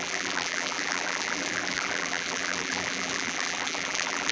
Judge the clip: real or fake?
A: fake